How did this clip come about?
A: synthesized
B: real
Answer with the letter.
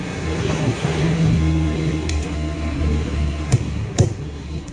A